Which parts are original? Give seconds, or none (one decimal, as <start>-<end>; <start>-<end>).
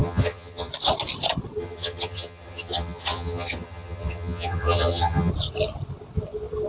0.7-1.6; 5.3-6.7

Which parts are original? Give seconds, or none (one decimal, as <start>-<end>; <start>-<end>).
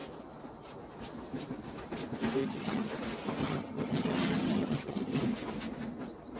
0.0-2.4; 2.9-3.4; 5.2-6.4